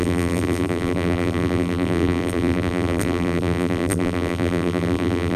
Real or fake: fake